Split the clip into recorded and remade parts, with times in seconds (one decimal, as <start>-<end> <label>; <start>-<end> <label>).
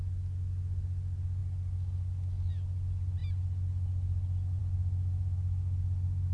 0.0-6.3 recorded